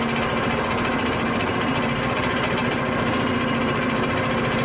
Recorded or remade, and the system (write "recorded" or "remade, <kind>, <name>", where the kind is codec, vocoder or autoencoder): recorded